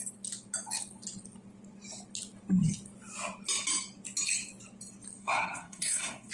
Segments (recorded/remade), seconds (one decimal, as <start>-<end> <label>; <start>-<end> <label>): 0.0-5.2 recorded; 5.2-6.3 remade